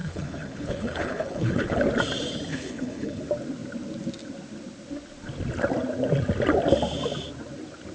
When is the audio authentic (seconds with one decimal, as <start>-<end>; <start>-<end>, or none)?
1.8-2.5; 3.2-7.9